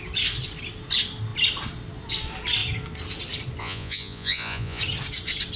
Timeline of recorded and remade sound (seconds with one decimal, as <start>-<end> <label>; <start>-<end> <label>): 0.0-3.6 recorded; 3.6-4.8 remade; 4.8-5.6 recorded